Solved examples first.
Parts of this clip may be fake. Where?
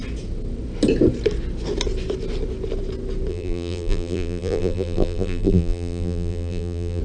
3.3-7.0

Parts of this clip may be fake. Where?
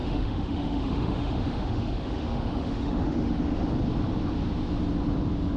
0.0-3.4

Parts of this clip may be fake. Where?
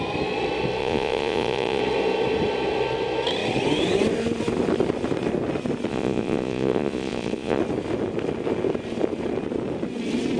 0.8-1.8; 5.9-7.6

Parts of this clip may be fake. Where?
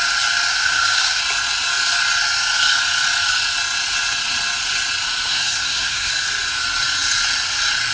0.5-1.2; 5.3-6.1